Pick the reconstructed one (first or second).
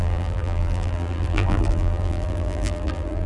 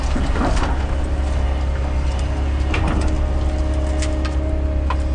first